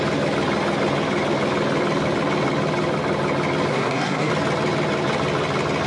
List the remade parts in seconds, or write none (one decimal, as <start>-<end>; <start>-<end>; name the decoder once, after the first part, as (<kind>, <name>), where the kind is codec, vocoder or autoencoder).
3.7-4.3 (codec, SNAC)